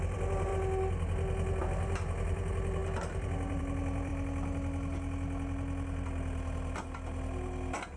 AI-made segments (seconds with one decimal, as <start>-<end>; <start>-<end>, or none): 0.0-0.5; 1.6-4.1